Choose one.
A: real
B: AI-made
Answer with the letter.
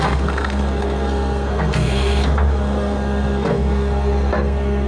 B